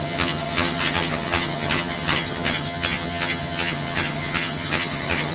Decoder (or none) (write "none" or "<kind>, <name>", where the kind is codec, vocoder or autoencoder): vocoder, HiFi-GAN